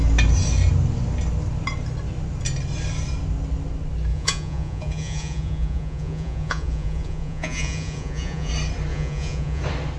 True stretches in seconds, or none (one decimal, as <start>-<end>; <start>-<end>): 0.0-4.1; 8.5-8.9; 9.6-10.0

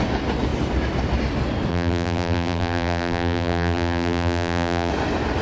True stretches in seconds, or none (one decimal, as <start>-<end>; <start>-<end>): 0.0-1.7; 4.9-5.4

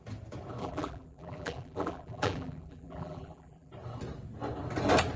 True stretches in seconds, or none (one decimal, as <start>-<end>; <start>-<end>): 0.0-0.6; 3.7-5.2

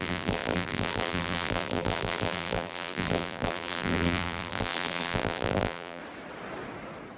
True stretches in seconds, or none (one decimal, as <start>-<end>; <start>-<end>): 6.0-7.2